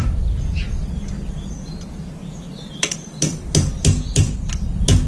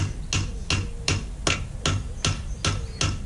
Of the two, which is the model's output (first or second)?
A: first